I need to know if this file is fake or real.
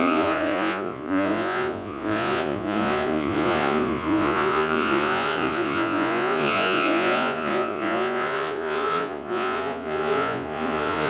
fake